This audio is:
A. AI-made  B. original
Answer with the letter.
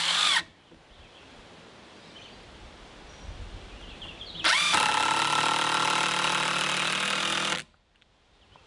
B